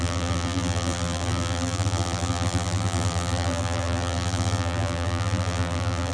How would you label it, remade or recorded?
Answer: remade